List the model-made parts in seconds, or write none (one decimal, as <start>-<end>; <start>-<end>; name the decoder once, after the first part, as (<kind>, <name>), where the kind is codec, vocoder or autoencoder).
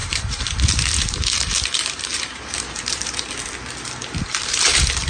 0.0-3.1 (vocoder, BigVGAN v2); 4.2-5.1